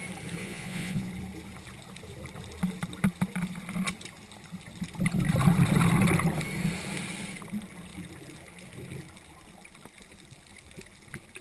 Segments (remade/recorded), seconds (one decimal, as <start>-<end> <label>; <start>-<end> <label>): 0.0-0.4 recorded; 0.4-1.1 remade; 1.1-11.4 recorded